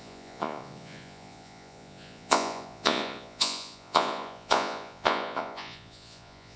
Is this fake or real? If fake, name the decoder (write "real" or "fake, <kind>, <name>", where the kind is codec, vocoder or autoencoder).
fake, vocoder, Vocos